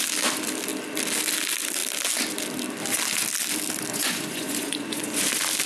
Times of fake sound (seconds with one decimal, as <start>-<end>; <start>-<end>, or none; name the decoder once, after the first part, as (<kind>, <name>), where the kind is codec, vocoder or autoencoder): 3.9-5.2 (vocoder, Vocos)

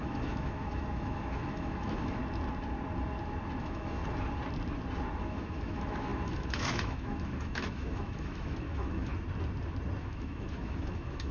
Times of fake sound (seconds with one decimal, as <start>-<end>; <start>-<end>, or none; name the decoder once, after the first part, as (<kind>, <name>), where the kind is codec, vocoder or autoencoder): 0.0-2.2 (autoencoder, DAC-VAE); 3.6-4.0; 5.2-9.1; 10.0-11.3